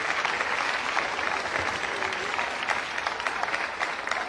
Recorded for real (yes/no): yes